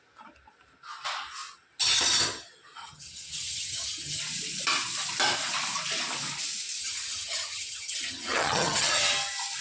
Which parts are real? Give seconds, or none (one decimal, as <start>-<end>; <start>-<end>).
0.0-2.8; 4.2-6.8; 9.0-9.6